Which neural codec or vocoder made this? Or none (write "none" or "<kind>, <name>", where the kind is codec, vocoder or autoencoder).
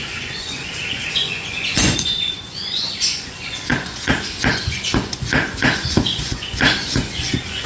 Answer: vocoder, Vocos